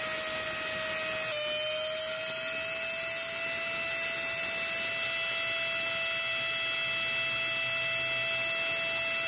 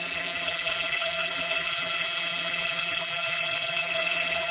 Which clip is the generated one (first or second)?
second